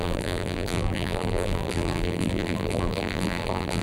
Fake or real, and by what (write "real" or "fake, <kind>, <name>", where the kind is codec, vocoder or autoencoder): fake, vocoder, BigVGAN v2